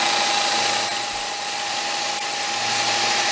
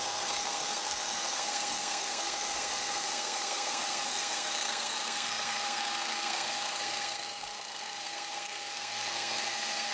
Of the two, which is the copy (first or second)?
second